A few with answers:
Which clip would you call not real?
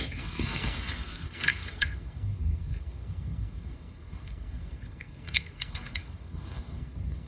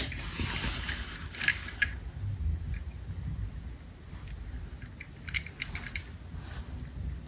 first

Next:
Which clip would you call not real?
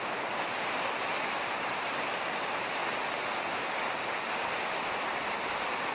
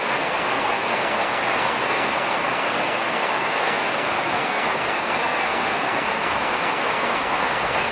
second